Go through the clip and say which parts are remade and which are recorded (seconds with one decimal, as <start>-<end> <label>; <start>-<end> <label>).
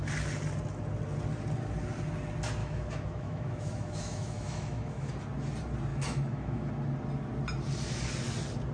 0.0-2.6 recorded; 2.6-5.1 remade; 5.1-5.9 recorded; 5.9-6.7 remade; 6.7-8.7 recorded